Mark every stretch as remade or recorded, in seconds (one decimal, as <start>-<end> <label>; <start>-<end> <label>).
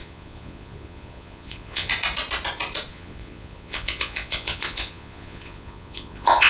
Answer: 0.0-1.9 remade; 1.9-2.9 recorded; 2.9-6.5 remade